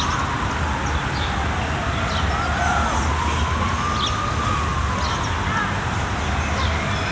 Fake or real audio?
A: real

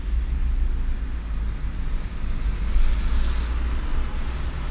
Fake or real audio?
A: real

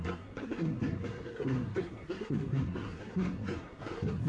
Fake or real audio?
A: fake